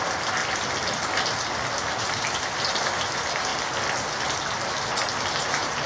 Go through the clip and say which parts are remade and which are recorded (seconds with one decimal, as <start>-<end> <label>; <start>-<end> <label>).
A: 0.0-0.4 remade; 0.4-2.0 recorded; 2.0-3.5 remade; 3.5-5.3 recorded; 5.3-5.9 remade